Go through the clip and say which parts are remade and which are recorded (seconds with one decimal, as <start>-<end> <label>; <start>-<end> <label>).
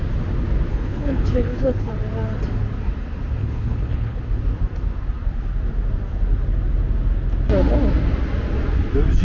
0.0-0.7 recorded; 0.7-1.9 remade; 1.9-3.4 recorded; 3.4-4.2 remade; 4.2-9.2 recorded